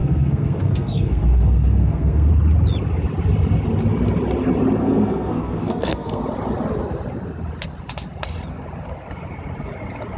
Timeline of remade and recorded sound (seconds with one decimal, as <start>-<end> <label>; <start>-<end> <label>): 0.0-2.3 remade; 2.3-4.8 recorded; 4.8-6.2 remade; 6.2-10.2 recorded